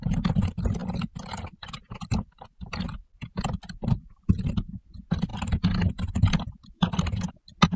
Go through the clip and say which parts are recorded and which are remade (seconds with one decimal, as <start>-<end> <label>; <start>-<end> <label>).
0.0-0.8 recorded; 0.8-2.7 remade; 2.7-5.3 recorded; 5.3-7.3 remade; 7.3-7.8 recorded